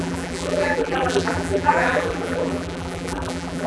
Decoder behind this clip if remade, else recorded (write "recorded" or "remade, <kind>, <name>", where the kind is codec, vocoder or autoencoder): remade, vocoder, BigVGAN v2